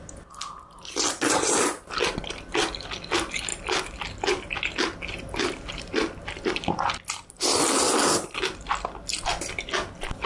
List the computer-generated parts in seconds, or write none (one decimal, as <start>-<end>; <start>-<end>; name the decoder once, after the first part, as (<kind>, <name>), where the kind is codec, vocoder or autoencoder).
none